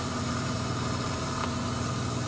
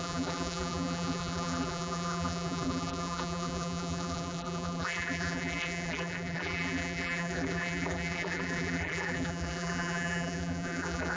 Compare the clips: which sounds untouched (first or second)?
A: first